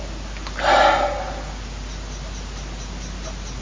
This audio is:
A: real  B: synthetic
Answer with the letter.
A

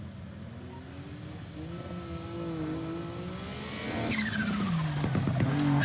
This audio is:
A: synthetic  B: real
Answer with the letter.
B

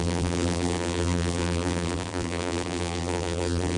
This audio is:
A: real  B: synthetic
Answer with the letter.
B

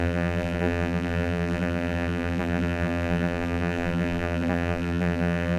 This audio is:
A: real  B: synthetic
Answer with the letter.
B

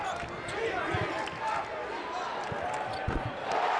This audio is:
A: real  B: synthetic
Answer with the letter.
A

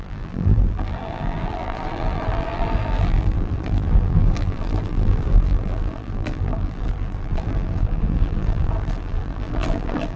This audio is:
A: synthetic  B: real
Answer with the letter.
A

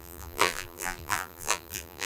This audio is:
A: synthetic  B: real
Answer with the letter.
A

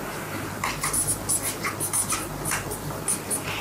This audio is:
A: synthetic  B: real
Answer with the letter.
B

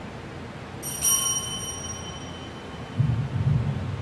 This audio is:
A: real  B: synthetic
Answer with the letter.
A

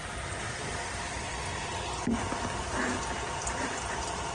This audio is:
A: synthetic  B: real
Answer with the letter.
A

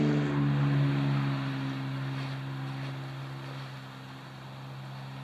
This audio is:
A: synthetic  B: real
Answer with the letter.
B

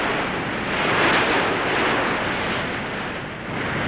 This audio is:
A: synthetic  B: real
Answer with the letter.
B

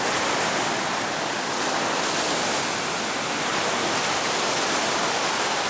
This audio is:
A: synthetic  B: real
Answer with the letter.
B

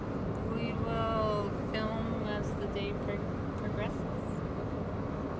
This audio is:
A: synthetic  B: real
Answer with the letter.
B